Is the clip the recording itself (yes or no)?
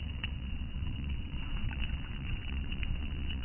no